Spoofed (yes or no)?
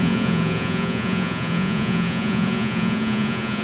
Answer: yes